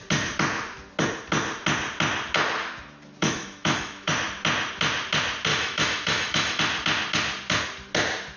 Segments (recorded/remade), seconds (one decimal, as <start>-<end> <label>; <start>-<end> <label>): 0.0-3.2 recorded; 3.2-4.1 remade; 4.1-5.5 recorded; 5.5-6.6 remade; 6.6-8.4 recorded